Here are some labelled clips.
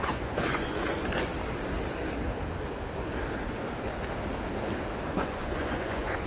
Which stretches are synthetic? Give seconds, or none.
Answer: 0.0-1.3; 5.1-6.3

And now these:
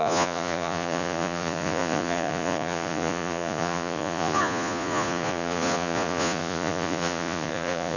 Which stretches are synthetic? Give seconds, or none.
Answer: 0.0-8.0

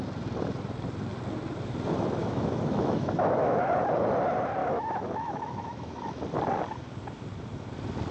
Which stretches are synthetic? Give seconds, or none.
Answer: 2.2-3.7; 4.6-6.2

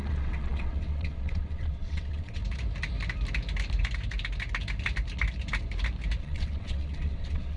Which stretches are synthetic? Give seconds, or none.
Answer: 0.0-2.4; 6.2-7.6